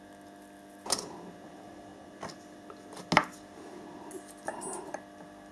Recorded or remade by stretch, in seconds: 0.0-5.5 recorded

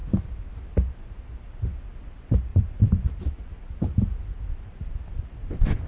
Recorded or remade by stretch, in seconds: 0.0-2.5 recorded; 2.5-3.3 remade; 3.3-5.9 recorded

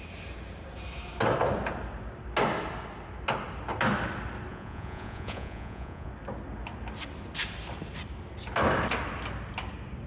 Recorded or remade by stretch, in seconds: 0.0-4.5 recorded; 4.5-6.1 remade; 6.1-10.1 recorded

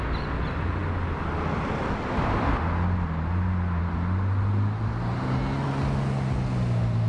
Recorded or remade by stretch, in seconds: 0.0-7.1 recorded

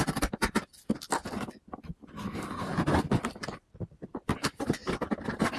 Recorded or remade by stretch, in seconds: 0.0-1.2 remade; 1.2-3.1 recorded; 3.1-5.6 remade